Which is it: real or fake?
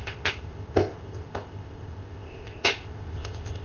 fake